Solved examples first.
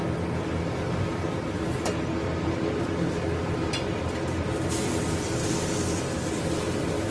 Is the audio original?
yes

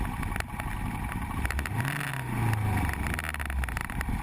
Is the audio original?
yes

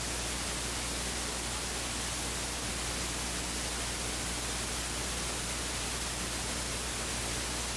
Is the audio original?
yes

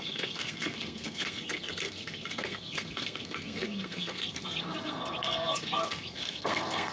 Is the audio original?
no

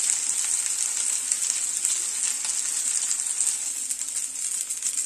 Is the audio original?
yes